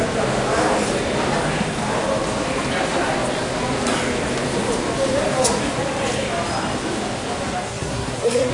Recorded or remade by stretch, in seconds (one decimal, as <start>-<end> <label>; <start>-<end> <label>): 0.0-7.6 recorded; 7.6-8.5 remade